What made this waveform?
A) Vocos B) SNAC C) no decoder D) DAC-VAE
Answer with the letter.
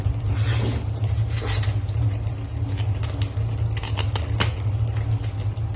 C